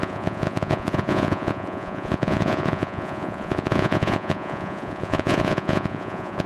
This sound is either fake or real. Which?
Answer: fake